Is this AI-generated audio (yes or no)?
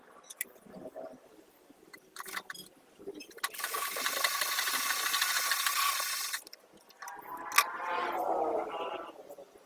yes